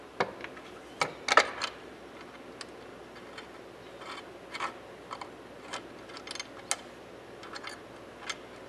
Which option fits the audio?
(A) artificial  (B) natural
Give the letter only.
B